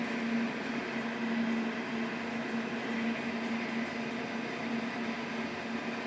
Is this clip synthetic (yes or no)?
no